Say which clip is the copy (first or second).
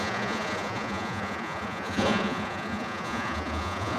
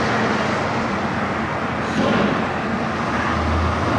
first